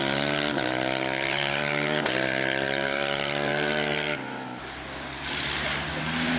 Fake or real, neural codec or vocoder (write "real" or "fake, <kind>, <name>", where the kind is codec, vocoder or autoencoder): fake, vocoder, BigVGAN v2